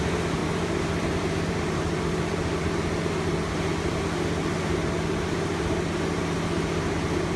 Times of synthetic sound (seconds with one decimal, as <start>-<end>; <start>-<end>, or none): 0.4-1.8